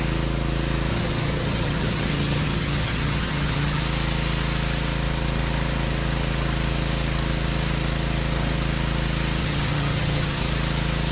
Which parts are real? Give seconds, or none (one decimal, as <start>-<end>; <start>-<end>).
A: 0.0-0.9; 3.8-9.4; 10.4-11.1